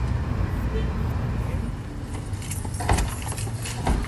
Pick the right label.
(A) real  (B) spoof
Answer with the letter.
A